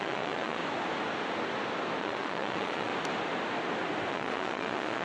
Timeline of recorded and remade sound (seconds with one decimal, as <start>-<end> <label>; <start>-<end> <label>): 0.0-0.6 remade; 0.6-2.0 recorded; 2.0-2.9 remade; 2.9-4.1 recorded; 4.1-5.0 remade